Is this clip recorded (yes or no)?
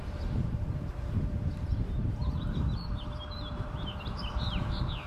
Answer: no